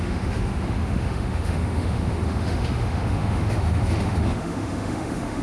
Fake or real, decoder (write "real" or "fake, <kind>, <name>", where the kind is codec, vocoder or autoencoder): fake, autoencoder, DAC-VAE